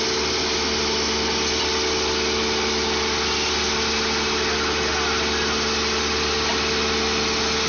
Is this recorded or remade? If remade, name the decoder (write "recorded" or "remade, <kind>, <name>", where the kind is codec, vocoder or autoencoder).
recorded